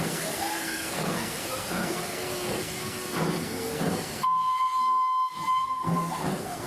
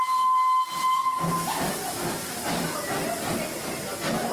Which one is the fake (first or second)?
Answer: first